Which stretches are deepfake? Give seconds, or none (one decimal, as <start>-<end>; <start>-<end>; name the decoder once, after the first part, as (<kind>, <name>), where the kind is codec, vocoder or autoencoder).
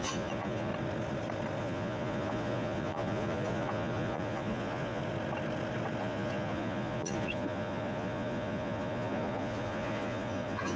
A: 0.0-0.7 (vocoder, Vocos); 1.6-5.0; 6.0-10.8